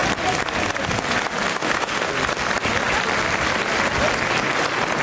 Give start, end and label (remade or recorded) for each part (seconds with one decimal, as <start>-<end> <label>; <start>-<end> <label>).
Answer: 0.0-1.5 recorded; 1.5-2.1 remade; 2.1-5.0 recorded